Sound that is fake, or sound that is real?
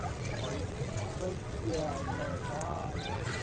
fake